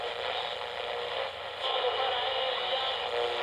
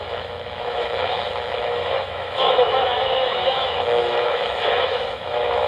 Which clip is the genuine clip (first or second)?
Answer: first